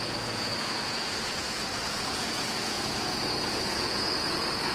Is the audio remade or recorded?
remade